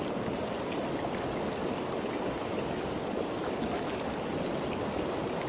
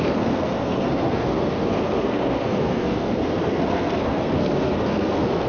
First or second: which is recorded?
first